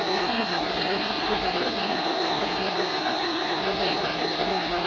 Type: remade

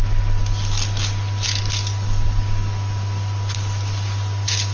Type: recorded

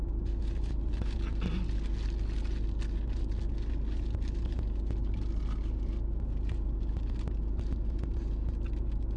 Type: recorded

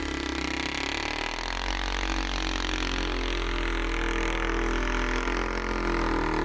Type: recorded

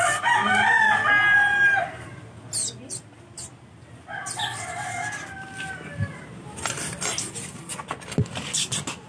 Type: recorded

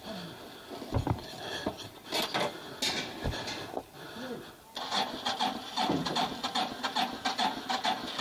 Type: recorded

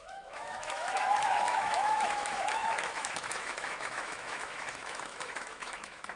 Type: remade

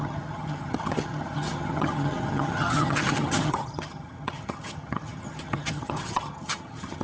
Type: remade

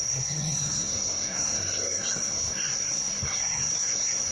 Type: remade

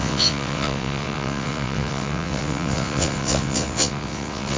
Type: remade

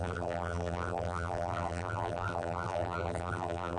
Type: remade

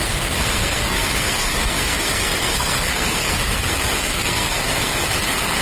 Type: remade